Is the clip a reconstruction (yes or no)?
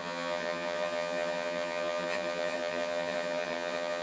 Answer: yes